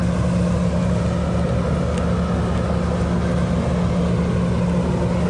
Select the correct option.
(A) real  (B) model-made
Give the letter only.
A